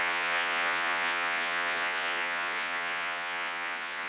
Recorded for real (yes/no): no